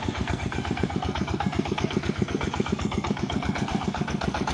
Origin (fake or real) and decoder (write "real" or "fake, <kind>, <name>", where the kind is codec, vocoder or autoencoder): fake, codec, SNAC